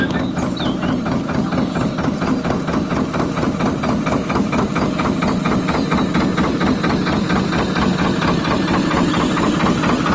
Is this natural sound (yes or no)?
yes